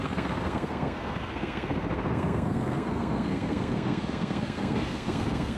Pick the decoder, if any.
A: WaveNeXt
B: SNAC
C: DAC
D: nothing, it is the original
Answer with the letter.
B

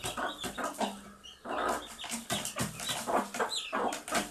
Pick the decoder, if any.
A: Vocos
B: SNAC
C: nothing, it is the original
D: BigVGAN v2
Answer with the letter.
C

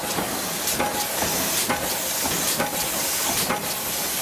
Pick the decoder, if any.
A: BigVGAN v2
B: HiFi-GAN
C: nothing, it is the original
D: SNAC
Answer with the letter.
C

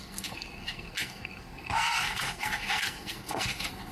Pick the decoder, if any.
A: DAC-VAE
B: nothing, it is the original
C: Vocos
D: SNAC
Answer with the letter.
D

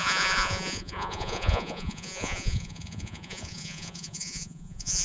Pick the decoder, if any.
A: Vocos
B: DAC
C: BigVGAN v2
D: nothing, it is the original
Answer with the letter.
A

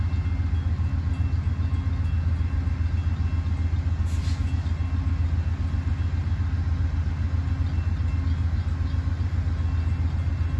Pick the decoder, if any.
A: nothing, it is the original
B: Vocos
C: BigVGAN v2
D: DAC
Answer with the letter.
A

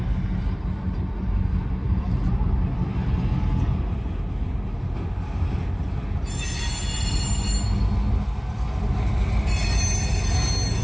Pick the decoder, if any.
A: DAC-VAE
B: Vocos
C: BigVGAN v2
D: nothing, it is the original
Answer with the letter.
D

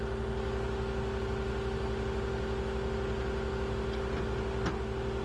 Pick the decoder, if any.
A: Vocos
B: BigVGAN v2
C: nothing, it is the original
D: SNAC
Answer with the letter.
C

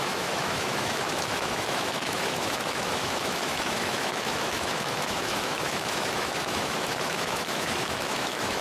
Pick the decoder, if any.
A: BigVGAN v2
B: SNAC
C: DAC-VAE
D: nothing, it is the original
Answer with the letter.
C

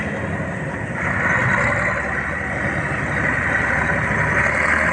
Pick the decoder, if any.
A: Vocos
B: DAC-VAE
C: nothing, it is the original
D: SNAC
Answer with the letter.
C